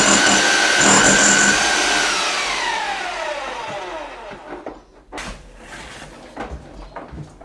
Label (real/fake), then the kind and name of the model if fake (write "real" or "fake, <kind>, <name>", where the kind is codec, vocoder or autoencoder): real